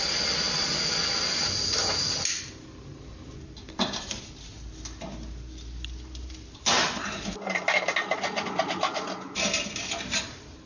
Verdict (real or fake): real